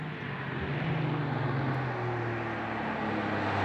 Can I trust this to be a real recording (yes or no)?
yes